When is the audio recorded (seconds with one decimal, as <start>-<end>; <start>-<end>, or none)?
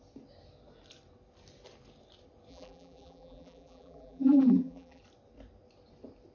0.0-2.5; 5.0-6.3